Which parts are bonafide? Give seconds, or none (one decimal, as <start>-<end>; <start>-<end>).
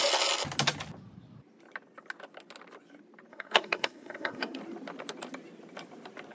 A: 0.0-3.3; 4.6-6.3